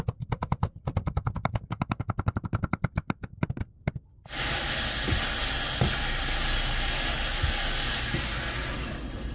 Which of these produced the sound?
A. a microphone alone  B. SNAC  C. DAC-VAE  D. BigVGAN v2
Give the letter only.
A